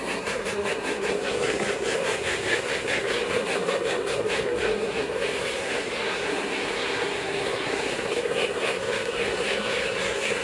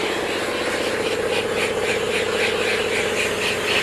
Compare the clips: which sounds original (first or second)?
second